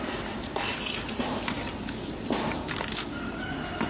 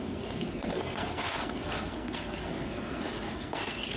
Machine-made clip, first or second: second